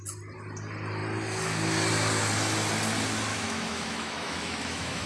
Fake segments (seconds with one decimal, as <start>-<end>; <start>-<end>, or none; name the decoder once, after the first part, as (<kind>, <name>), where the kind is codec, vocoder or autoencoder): 3.3-5.1 (autoencoder, DAC-VAE)

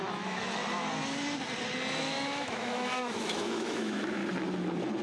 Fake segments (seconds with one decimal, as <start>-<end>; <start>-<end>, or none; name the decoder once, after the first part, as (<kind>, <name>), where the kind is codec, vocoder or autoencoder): 0.0-0.6 (autoencoder, DAC-VAE); 2.0-4.2

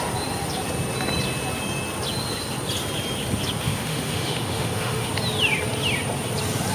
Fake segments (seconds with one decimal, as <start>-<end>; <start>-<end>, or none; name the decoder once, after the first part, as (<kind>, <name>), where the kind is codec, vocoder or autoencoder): 3.7-5.1 (autoencoder, DAC-VAE)

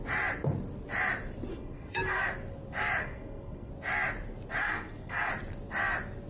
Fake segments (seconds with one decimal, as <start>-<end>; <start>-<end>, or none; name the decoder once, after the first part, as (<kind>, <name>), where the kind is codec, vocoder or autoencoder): 1.5-2.2 (codec, SNAC); 3.0-3.7; 4.6-5.3

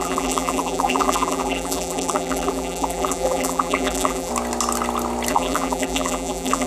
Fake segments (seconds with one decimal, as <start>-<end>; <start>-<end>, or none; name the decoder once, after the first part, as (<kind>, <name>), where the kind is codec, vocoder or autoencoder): 0.0-4.3 (vocoder, BigVGAN v2); 5.3-6.7

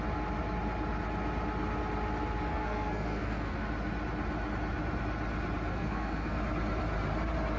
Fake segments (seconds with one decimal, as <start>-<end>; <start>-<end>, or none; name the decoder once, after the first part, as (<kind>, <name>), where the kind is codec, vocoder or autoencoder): 2.5-3.6 (codec, SNAC); 5.7-6.4

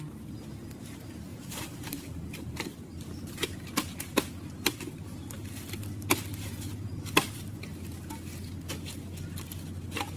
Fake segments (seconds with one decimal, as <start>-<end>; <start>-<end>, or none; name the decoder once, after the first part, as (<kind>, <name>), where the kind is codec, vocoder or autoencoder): 1.3-2.6 (vocoder, BigVGAN v2)

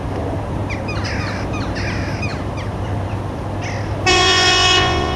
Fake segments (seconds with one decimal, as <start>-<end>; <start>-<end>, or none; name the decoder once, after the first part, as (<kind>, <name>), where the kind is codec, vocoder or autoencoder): 4.1-5.2 (vocoder, Vocos)